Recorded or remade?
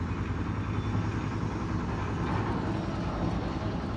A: recorded